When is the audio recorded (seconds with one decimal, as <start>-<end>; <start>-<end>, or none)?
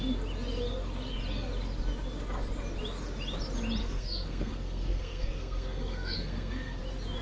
0.0-3.8; 6.8-7.2